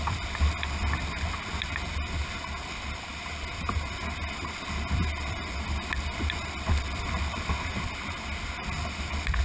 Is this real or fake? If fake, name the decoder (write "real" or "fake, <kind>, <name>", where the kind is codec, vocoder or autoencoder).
real